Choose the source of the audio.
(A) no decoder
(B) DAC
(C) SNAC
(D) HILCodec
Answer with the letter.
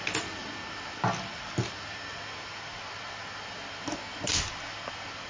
A